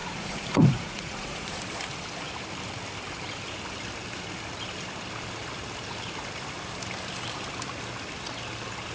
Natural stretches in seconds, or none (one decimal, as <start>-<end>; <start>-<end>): 1.6-8.9